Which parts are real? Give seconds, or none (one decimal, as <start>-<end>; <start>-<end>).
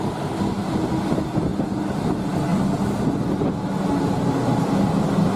0.0-0.6; 1.1-2.5; 3.5-5.4